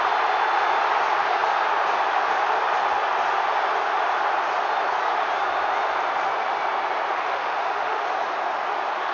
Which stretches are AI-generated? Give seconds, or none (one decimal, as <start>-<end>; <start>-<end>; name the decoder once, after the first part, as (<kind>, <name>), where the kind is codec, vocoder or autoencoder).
7.1-8.1 (autoencoder, DAC-VAE)